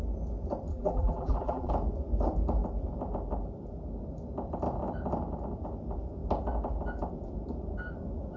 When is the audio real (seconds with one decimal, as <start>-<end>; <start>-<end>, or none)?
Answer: 0.0-0.7; 1.7-8.4

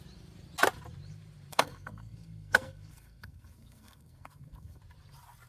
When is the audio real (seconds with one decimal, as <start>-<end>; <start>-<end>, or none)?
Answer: 0.0-1.5; 4.8-5.5

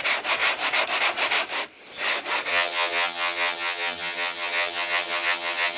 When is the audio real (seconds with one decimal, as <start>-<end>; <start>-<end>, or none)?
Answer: 0.0-2.5

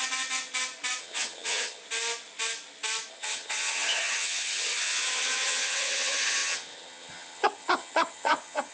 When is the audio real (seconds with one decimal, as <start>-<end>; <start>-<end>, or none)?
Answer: 0.0-1.0; 1.8-3.1